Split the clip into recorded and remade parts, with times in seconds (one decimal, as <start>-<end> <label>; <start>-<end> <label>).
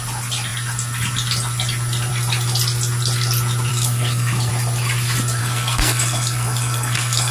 0.0-3.7 recorded; 3.7-4.5 remade; 4.5-5.4 recorded; 5.4-7.3 remade